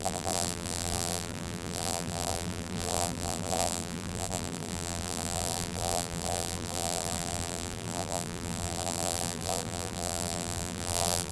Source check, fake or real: fake